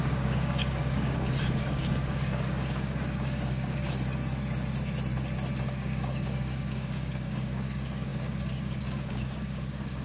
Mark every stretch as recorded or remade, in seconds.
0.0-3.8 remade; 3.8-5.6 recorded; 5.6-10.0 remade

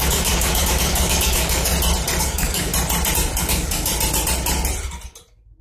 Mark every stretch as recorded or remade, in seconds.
0.0-1.7 remade; 1.7-2.2 recorded; 2.2-2.7 remade; 2.7-3.4 recorded; 3.4-3.9 remade; 3.9-5.6 recorded

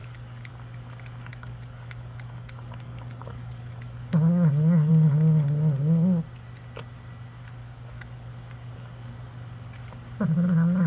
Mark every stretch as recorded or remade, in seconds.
0.0-0.5 remade; 0.5-1.3 recorded; 1.3-4.9 remade; 4.9-7.6 recorded; 7.6-8.3 remade; 8.3-10.9 recorded